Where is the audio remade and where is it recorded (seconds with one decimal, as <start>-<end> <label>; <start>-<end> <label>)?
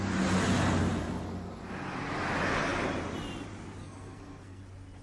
0.0-3.8 recorded; 3.8-4.6 remade; 4.6-5.0 recorded